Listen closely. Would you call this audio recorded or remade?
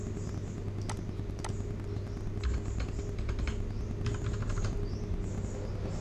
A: recorded